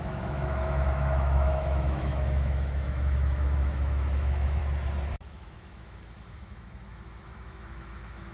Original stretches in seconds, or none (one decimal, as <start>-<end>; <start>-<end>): 4.6-5.2